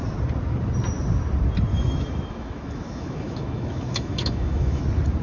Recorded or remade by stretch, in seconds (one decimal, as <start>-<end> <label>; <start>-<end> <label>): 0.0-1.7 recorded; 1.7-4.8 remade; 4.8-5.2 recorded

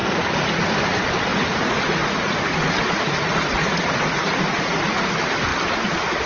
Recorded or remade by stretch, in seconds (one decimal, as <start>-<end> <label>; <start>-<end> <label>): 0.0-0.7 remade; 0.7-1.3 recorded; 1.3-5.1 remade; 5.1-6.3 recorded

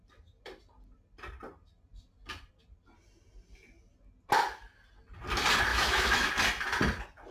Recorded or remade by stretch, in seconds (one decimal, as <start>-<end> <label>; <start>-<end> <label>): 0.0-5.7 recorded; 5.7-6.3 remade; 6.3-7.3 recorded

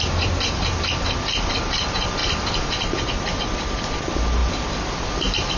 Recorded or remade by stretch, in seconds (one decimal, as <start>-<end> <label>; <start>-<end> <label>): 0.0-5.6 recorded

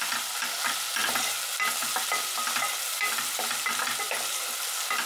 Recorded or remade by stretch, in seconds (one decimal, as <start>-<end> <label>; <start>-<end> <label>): 0.0-5.1 recorded